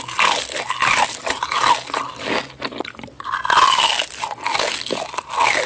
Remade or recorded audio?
recorded